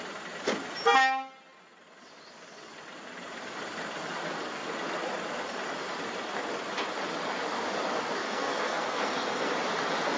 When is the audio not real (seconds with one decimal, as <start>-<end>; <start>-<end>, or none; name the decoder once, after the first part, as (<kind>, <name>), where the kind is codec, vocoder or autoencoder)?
8.2-9.5 (codec, SNAC)